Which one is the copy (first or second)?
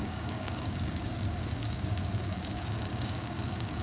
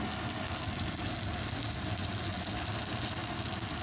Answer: first